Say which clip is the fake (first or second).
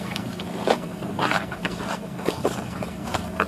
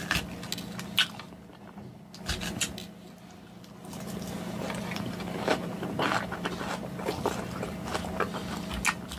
first